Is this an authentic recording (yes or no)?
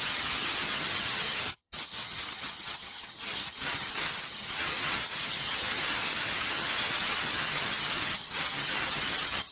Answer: no